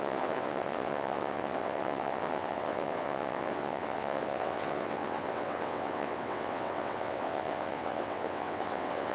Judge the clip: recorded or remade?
remade